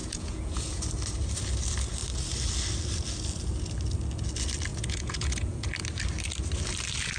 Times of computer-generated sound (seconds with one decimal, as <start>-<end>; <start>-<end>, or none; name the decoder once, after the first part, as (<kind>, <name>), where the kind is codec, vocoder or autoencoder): 0.0-0.8 (vocoder, Vocos); 4.7-5.7